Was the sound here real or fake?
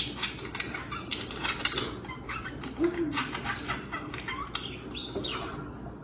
real